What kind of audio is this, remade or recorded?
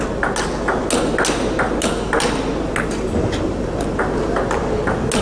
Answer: recorded